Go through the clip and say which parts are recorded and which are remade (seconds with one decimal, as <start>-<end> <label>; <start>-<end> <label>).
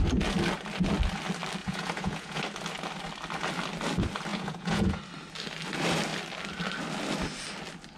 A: 0.0-1.6 recorded; 1.6-2.4 remade; 2.4-4.3 recorded; 4.3-5.0 remade; 5.0-8.0 recorded